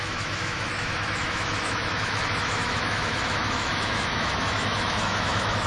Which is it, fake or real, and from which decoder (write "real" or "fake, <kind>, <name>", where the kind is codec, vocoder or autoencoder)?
fake, autoencoder, DAC-VAE